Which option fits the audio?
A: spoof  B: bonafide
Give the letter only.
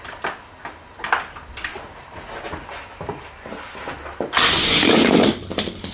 B